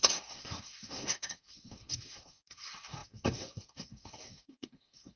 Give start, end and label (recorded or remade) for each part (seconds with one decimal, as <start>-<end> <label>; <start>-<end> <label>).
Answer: 0.0-5.2 remade